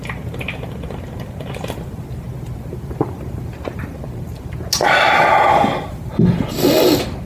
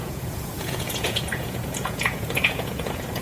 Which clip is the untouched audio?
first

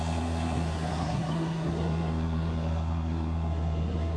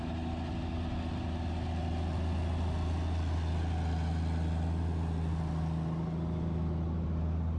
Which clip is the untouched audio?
second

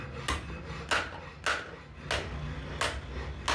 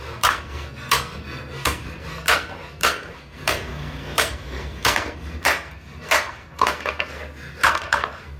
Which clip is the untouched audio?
first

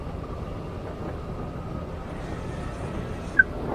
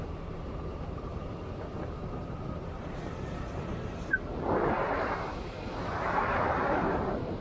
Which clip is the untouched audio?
first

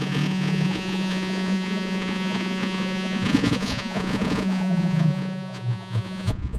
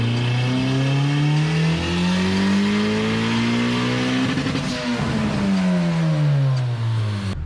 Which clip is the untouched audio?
second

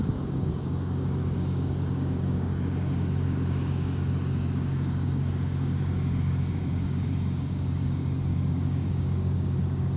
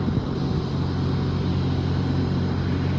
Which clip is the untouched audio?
second